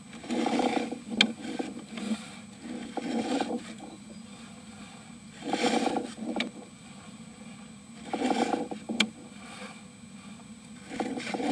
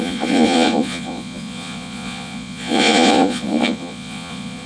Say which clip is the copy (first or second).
second